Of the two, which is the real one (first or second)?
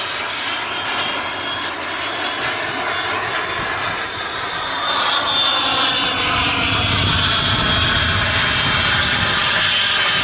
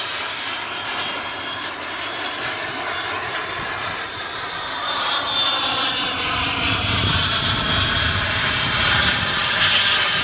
first